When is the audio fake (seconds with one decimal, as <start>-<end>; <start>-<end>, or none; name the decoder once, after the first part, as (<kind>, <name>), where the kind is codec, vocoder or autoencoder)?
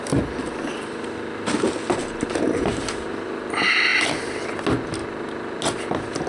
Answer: none